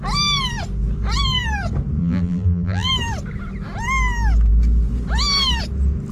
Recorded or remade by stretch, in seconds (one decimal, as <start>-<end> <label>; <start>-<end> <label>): 0.0-2.0 recorded; 2.0-2.9 remade; 2.9-6.1 recorded

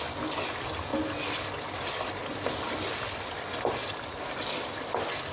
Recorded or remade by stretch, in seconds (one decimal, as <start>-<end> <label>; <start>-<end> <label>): 0.0-5.3 recorded